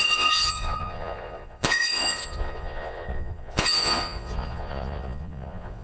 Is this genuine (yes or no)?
no